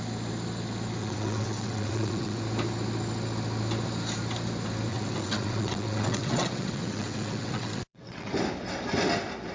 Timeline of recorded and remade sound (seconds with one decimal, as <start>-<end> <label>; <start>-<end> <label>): 0.0-1.0 recorded; 1.0-2.4 remade; 2.4-4.9 recorded; 4.9-8.3 remade; 8.3-9.5 recorded

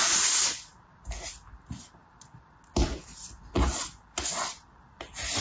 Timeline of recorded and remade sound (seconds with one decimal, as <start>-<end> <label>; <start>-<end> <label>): 0.0-5.4 recorded

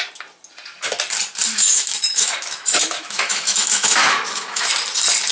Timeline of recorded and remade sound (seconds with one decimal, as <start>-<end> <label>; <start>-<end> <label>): 0.0-1.5 recorded; 1.5-4.7 remade; 4.7-5.3 recorded

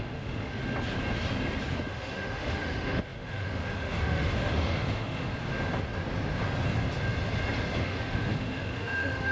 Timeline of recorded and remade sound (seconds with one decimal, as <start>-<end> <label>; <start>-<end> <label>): 0.0-0.6 remade; 0.6-1.9 recorded; 1.9-5.3 remade; 5.3-7.8 recorded; 7.8-9.3 remade

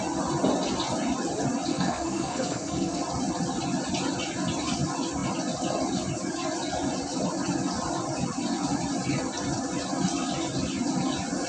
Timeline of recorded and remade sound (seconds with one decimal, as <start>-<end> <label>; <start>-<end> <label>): 0.0-1.7 recorded; 1.7-3.0 remade; 3.0-11.5 recorded

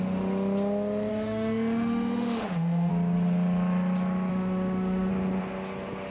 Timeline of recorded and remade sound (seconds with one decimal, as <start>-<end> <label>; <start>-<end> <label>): 0.0-1.1 recorded; 1.1-2.9 remade; 2.9-4.3 recorded; 4.3-5.1 remade; 5.1-6.1 recorded